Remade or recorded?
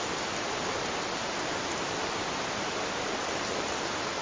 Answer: remade